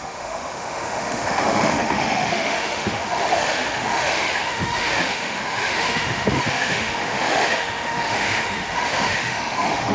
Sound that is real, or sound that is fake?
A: fake